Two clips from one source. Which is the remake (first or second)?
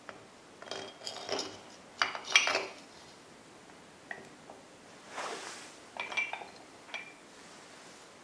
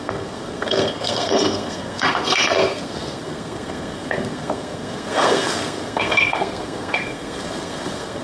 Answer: second